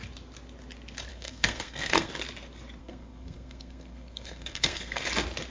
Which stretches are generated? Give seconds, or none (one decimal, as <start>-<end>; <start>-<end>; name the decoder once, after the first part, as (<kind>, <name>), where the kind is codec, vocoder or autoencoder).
1.1-2.1 (codec, SNAC); 2.8-5.0